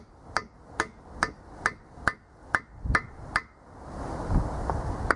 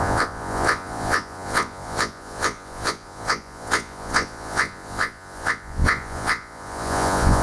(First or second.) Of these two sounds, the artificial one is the second